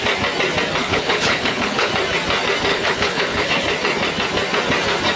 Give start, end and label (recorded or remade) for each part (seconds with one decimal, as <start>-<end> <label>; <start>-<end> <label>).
0.0-0.8 recorded; 0.8-1.9 remade; 1.9-2.7 recorded; 2.7-3.5 remade; 3.5-5.2 recorded